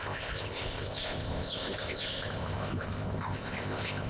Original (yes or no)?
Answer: no